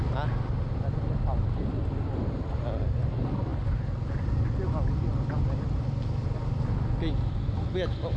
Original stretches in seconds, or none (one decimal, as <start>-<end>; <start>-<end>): 0.0-8.2